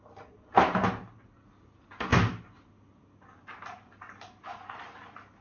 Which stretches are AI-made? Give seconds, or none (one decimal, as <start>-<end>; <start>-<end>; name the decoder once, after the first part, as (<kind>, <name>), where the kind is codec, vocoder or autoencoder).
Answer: none